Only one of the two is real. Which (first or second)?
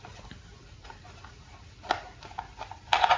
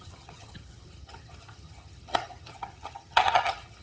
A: first